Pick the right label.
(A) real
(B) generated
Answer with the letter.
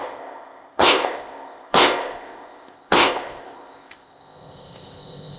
B